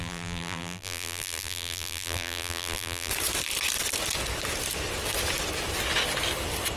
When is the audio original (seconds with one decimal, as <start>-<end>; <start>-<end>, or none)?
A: 3.1-6.8